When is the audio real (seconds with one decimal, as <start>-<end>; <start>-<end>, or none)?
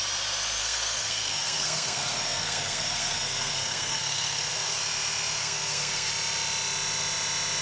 0.0-0.6; 4.8-5.4; 6.1-7.6